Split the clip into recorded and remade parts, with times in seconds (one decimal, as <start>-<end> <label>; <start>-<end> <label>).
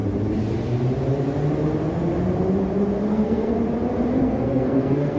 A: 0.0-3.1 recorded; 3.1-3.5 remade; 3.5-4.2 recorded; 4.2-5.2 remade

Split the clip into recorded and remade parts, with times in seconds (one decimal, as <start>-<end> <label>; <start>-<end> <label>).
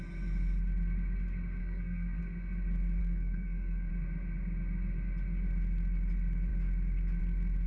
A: 0.0-1.6 recorded; 1.6-2.2 remade; 2.2-3.0 recorded; 3.0-3.9 remade; 3.9-7.7 recorded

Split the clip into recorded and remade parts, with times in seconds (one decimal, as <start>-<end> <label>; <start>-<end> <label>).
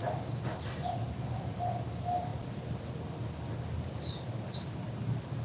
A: 0.0-5.4 recorded